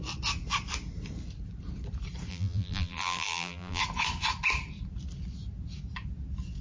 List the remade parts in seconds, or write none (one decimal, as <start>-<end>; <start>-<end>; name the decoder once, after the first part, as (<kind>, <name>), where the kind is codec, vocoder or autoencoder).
2.3-3.8 (vocoder, BigVGAN v2)